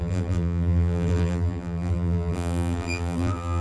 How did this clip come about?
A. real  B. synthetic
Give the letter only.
B